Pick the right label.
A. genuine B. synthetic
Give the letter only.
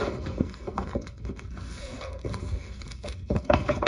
B